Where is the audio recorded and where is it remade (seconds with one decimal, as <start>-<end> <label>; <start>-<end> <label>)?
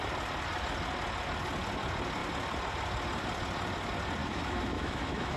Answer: 0.0-4.2 recorded; 4.2-5.4 remade